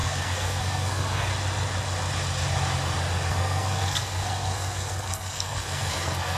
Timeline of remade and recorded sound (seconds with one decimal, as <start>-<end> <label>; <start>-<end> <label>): 0.0-1.3 remade; 1.3-3.3 recorded; 3.3-6.4 remade